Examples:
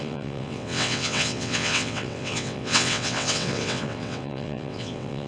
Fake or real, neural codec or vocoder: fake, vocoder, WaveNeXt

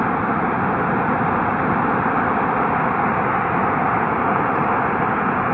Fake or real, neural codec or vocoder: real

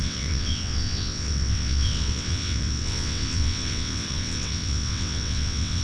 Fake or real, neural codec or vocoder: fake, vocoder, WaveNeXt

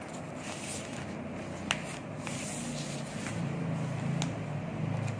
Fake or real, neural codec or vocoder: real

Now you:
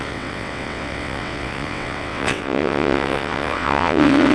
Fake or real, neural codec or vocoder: fake, vocoder, WaveNeXt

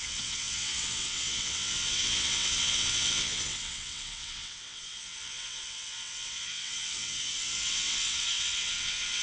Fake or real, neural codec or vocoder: fake, vocoder, WaveNeXt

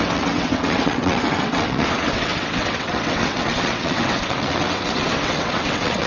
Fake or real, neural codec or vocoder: fake, vocoder, WaveNeXt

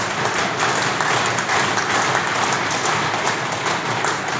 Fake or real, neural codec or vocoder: real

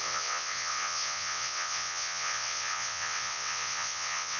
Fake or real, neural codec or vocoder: fake, vocoder, WaveNeXt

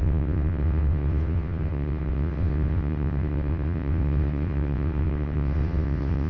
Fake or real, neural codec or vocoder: fake, vocoder, WaveNeXt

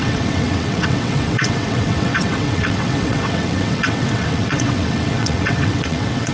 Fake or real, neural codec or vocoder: fake, vocoder, WaveNeXt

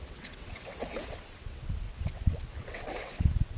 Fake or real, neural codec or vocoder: fake, vocoder, WaveNeXt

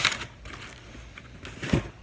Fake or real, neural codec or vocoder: real